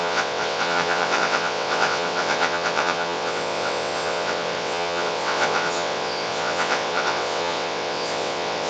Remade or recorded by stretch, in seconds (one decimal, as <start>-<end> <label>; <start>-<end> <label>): 0.0-8.7 remade